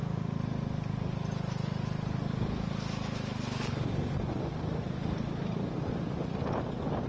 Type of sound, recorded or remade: recorded